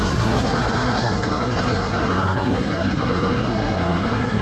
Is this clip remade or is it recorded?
remade